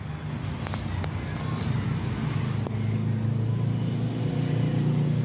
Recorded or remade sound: recorded